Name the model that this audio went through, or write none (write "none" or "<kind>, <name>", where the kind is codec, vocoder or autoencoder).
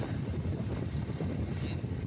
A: vocoder, BigVGAN v2